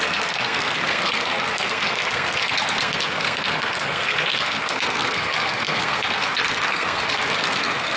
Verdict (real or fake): fake